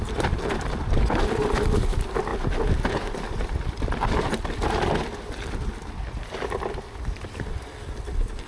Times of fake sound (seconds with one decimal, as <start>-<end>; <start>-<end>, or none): none